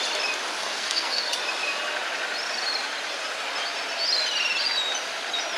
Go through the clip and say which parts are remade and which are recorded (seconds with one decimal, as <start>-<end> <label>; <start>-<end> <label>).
0.0-0.6 recorded; 0.6-1.2 remade; 1.2-5.6 recorded